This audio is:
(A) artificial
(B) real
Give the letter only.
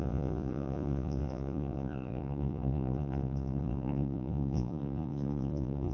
A